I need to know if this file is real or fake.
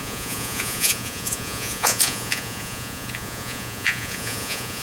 fake